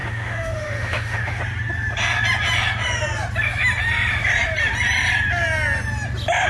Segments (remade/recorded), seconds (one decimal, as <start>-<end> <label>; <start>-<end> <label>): 0.0-1.4 remade; 1.4-6.5 recorded